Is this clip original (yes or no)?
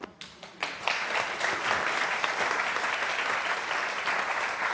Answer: yes